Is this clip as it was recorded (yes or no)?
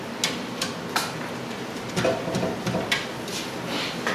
yes